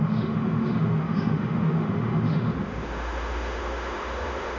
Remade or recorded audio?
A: remade